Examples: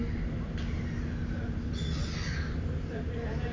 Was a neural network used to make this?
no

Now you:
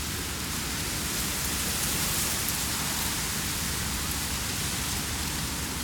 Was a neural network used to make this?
no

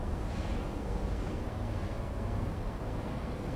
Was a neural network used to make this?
yes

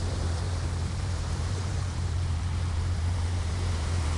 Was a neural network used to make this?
yes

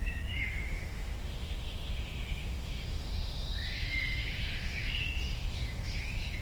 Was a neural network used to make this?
yes